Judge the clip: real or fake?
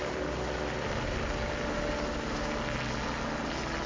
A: real